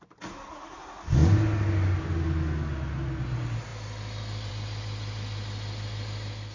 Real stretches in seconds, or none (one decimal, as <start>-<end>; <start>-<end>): 0.0-6.5